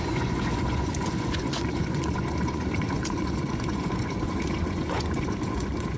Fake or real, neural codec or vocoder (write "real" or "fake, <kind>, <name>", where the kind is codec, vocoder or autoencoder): fake, vocoder, Vocos